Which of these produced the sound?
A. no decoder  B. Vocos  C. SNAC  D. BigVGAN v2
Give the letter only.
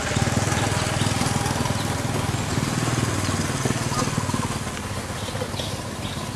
A